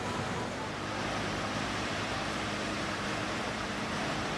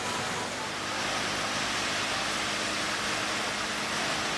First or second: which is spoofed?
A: first